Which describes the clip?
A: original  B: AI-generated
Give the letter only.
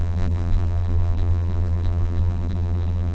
B